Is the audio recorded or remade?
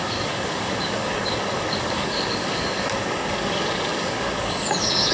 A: remade